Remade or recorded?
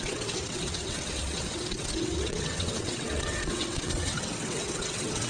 remade